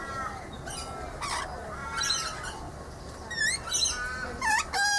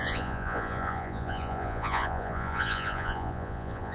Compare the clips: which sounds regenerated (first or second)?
second